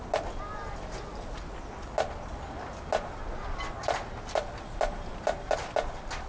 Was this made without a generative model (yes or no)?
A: yes